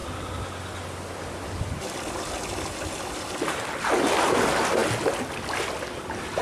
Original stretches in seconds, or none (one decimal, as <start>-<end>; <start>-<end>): 0.0-6.4